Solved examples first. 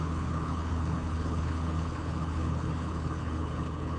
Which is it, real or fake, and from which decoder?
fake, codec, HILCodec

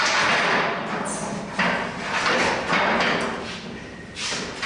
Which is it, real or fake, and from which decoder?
real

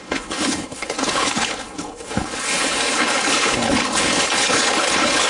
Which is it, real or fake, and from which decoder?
fake, codec, HILCodec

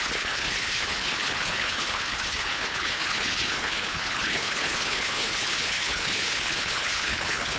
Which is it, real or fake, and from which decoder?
fake, codec, HILCodec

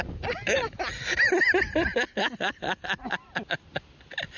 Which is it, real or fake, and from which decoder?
real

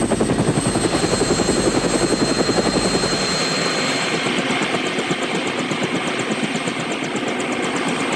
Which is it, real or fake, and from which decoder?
real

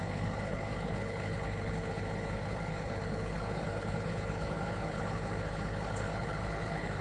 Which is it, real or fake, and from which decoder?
fake, codec, HILCodec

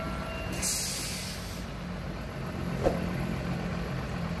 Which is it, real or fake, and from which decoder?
real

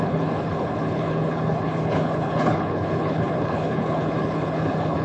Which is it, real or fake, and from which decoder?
fake, codec, HILCodec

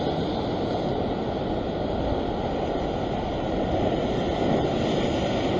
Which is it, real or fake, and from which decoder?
real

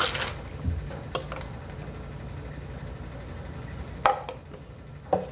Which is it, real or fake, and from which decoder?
real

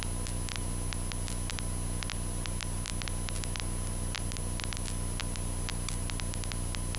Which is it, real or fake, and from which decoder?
real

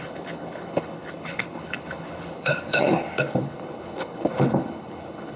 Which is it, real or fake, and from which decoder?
fake, codec, HILCodec